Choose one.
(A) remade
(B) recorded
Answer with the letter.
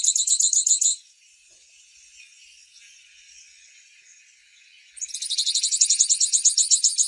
A